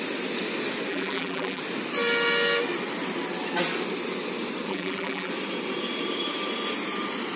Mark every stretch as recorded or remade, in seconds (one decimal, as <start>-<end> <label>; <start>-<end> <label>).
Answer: 0.0-0.9 recorded; 0.9-1.6 remade; 1.6-4.7 recorded; 4.7-5.3 remade; 5.3-7.4 recorded